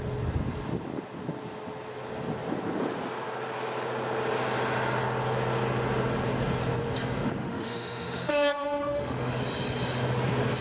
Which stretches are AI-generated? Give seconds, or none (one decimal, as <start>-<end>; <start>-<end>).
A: 7.4-9.4